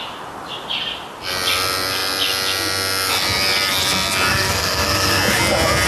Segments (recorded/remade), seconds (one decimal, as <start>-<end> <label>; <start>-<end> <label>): 0.0-4.3 recorded; 4.3-5.2 remade; 5.2-5.9 recorded